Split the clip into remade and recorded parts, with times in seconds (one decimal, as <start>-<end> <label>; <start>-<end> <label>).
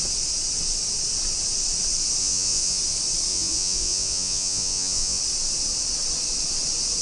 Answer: 0.0-2.2 recorded; 2.2-2.8 remade; 2.8-3.3 recorded; 3.3-5.2 remade; 5.2-7.0 recorded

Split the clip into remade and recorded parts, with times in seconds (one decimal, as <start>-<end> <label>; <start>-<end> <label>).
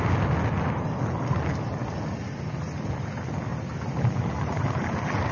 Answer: 0.0-5.3 recorded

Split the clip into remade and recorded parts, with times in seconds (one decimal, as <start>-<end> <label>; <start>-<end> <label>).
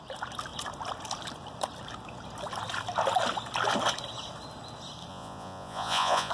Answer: 0.0-5.1 recorded; 5.1-6.3 remade